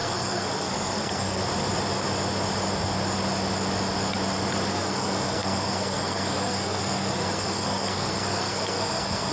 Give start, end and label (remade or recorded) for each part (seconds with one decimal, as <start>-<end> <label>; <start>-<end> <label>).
0.0-1.4 remade; 1.4-4.7 recorded; 4.7-9.3 remade